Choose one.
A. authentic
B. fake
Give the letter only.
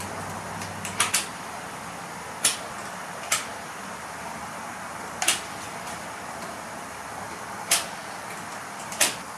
A